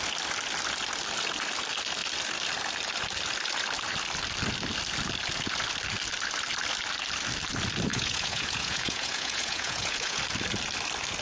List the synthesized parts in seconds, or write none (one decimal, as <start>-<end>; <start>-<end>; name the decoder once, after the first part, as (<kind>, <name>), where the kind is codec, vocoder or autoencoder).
7.9-10.2 (vocoder, Vocos)